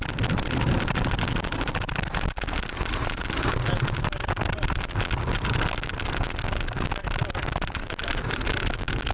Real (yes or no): yes